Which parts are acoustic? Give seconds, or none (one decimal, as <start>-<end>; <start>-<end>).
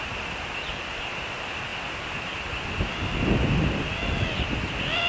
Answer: 0.0-5.1